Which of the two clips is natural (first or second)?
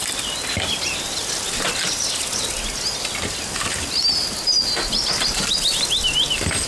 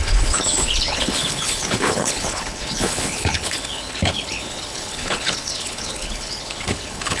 first